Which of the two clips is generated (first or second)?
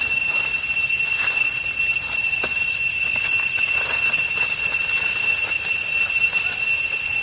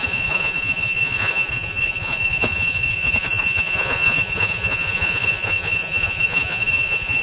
second